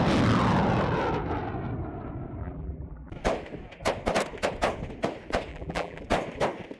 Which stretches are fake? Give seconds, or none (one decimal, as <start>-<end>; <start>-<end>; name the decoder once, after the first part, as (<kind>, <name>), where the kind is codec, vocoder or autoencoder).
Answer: 2.4-3.1 (vocoder, BigVGAN v2); 5.5-6.0